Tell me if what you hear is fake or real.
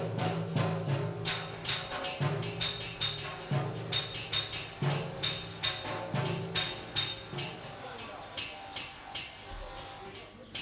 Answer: real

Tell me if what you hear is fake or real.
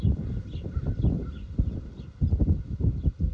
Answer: real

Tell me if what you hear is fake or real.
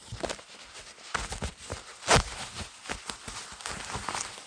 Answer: real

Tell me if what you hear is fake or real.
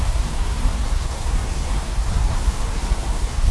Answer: fake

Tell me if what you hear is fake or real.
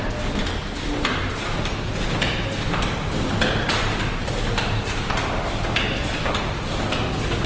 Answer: real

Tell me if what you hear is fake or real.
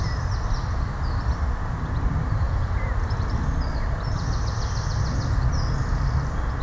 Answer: real